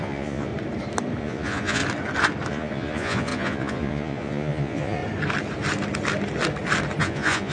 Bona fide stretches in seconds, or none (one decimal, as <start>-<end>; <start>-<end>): 0.5-1.2; 1.8-2.5; 5.0-7.0